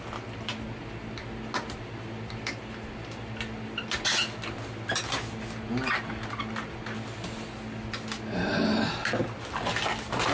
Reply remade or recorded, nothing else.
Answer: recorded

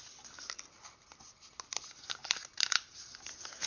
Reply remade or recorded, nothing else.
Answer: recorded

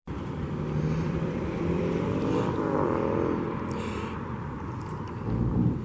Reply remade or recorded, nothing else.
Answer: remade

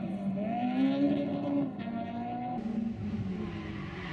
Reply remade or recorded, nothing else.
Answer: recorded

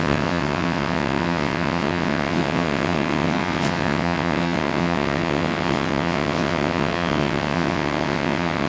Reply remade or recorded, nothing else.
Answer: remade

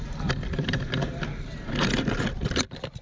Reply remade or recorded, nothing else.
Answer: recorded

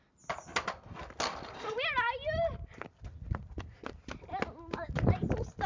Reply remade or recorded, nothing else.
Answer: recorded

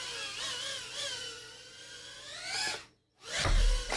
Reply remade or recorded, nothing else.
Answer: recorded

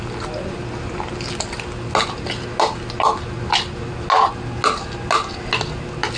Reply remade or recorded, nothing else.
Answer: recorded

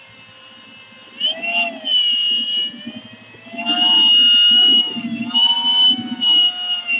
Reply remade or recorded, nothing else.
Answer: recorded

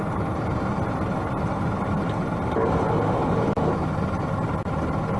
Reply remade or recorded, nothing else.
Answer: recorded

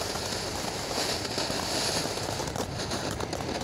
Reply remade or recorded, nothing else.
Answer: recorded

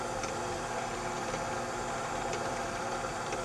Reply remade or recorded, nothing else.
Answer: remade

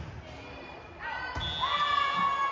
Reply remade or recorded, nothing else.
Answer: recorded